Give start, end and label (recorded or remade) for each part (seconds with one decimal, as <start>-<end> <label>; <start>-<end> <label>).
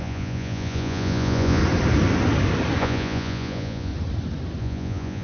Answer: 0.0-1.6 remade; 1.6-2.8 recorded; 2.8-3.9 remade; 3.9-4.6 recorded; 4.6-5.2 remade